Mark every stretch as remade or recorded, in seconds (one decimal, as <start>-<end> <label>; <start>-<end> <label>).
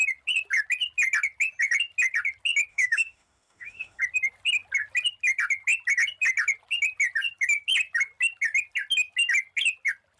0.0-2.7 recorded; 2.7-4.0 remade; 4.0-10.2 recorded